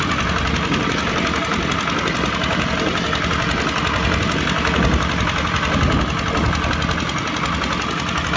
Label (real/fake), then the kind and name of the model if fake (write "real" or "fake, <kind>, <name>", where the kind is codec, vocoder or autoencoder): real